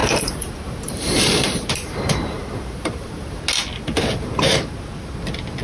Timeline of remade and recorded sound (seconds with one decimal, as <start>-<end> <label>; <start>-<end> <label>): 0.0-3.4 remade; 3.4-5.6 recorded